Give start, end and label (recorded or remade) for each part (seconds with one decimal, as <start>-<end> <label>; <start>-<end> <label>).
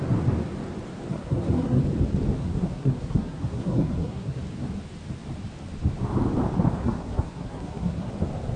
0.0-1.1 recorded; 1.1-1.8 remade; 1.8-2.4 recorded; 2.4-4.4 remade; 4.4-6.8 recorded; 6.8-8.1 remade; 8.1-8.6 recorded